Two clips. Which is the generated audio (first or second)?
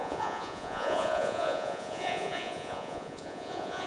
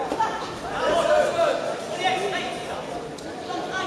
first